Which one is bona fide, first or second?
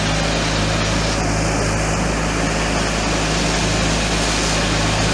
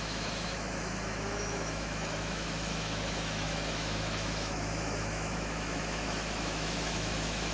first